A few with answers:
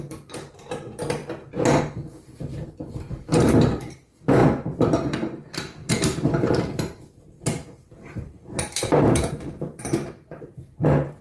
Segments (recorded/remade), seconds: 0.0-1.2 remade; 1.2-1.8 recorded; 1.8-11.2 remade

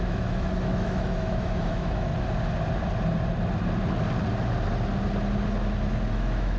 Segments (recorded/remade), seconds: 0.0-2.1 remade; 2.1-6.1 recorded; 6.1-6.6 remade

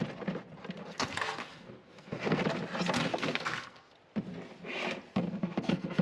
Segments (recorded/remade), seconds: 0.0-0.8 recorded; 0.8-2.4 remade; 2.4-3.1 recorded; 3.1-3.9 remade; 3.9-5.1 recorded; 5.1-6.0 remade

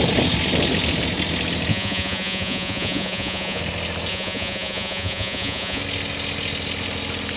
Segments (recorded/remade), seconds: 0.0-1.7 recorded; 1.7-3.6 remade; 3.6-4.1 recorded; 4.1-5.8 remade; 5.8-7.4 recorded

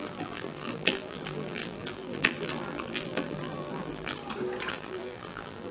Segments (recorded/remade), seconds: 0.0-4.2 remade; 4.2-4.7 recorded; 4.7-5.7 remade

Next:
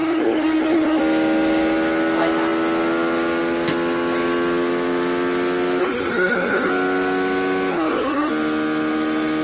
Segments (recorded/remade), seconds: 0.0-1.0 remade; 1.0-5.8 recorded; 5.8-6.7 remade; 6.7-7.7 recorded; 7.7-8.3 remade; 8.3-9.4 recorded